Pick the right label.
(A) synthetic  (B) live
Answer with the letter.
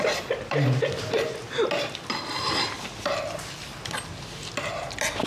B